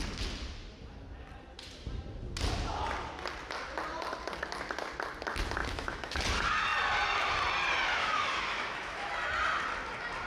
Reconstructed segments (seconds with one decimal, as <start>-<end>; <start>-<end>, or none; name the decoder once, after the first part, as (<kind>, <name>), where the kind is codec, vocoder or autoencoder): 5.6-6.2 (autoencoder, DAC-VAE); 8.0-9.1